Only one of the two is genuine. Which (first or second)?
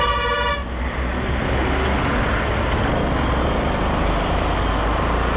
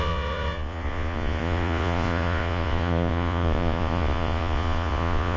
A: first